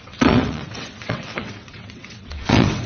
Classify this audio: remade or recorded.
remade